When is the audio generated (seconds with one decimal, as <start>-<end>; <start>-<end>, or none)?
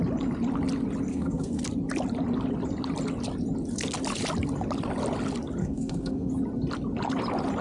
1.1-1.6; 5.6-6.3